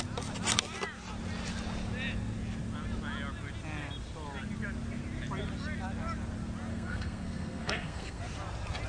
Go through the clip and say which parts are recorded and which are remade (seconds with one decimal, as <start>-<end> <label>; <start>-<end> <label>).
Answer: 0.0-6.7 recorded; 6.7-8.2 remade; 8.2-8.9 recorded